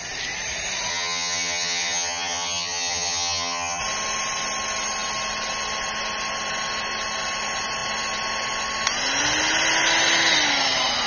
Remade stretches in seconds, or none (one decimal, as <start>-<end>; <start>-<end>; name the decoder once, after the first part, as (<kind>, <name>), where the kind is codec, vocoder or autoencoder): 0.9-3.8 (vocoder, HiFi-GAN)